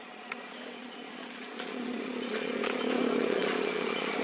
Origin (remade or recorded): remade